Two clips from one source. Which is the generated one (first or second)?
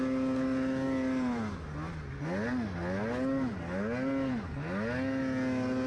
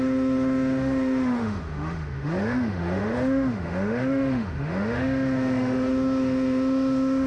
second